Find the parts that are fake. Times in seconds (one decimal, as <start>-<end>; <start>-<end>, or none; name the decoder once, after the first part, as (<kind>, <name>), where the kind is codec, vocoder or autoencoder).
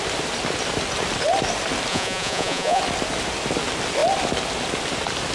1.9-2.8 (vocoder, Vocos)